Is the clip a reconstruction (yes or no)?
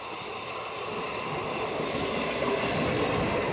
no